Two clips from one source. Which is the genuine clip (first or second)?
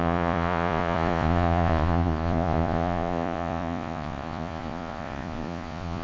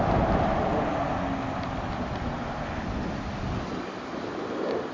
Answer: second